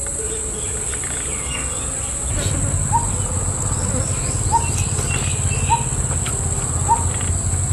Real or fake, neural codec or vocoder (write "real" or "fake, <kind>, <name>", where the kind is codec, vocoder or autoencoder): real